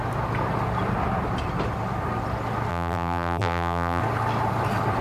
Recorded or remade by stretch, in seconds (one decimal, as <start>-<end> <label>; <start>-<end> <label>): 0.0-2.7 recorded; 2.7-4.0 remade; 4.0-5.0 recorded